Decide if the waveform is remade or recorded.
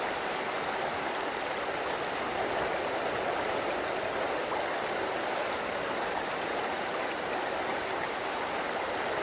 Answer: recorded